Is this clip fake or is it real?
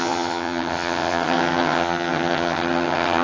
fake